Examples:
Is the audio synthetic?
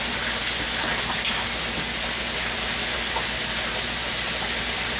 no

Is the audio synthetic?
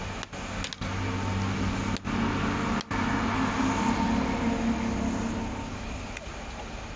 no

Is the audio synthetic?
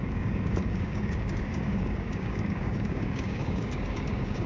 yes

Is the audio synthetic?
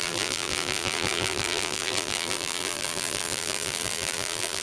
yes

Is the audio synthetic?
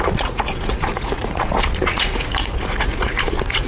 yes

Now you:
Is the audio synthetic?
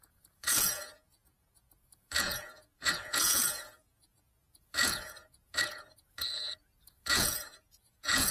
yes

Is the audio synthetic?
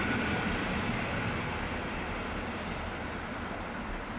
no